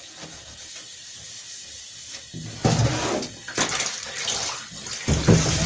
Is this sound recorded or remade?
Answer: recorded